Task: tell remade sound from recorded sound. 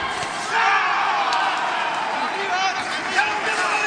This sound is recorded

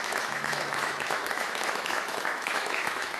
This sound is remade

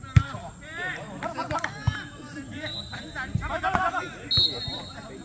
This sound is recorded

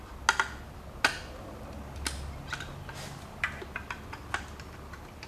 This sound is recorded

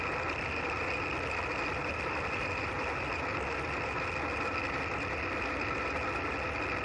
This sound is recorded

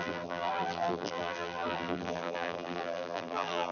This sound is remade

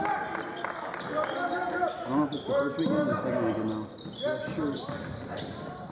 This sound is recorded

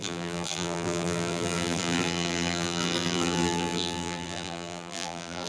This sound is remade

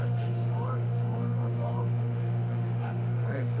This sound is remade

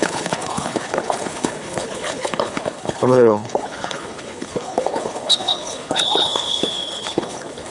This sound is remade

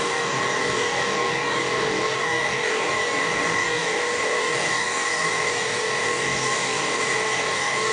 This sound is remade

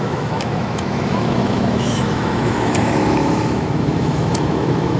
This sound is remade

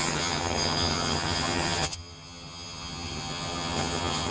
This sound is remade